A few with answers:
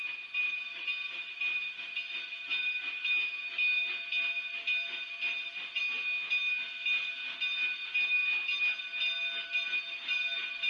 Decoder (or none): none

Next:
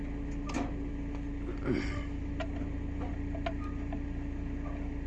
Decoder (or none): none